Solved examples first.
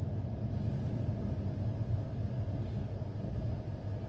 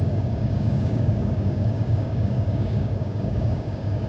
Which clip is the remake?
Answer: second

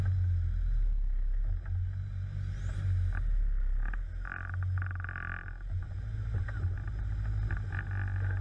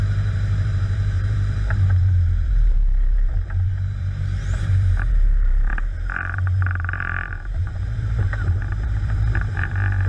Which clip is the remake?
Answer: second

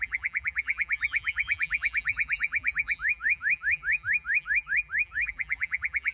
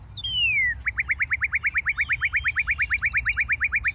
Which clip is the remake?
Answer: first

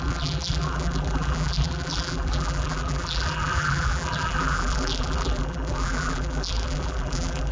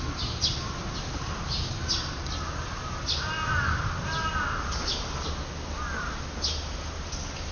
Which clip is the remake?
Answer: first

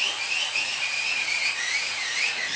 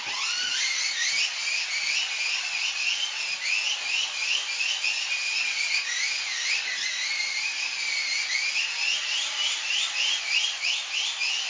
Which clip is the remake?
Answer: first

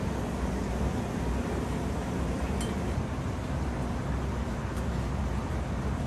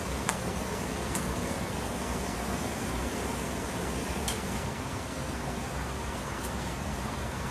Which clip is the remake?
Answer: second